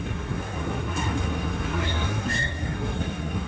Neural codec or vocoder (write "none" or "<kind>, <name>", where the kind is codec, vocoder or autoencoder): codec, SNAC